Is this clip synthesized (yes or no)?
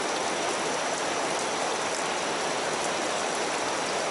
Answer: no